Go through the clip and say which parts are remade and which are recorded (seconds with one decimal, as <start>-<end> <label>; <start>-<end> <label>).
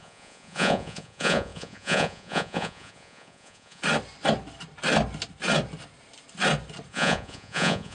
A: 0.0-3.8 remade; 3.8-6.9 recorded; 6.9-7.9 remade